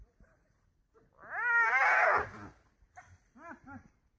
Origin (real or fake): real